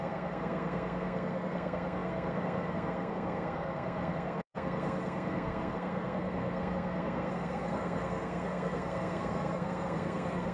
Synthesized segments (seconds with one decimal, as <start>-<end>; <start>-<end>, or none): 0.0-10.5